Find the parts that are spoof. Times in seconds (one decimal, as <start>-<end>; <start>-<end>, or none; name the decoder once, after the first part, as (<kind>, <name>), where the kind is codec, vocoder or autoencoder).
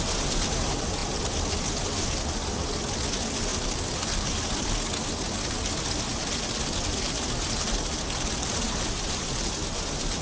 1.0-1.5 (vocoder, BigVGAN v2); 3.5-4.4; 6.1-10.2